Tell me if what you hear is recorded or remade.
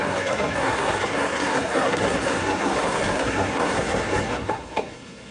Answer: remade